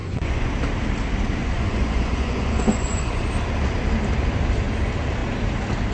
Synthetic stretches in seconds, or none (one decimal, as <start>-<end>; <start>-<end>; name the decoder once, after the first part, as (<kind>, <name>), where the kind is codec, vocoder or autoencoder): 0.0-0.5 (vocoder, Vocos); 1.4-3.1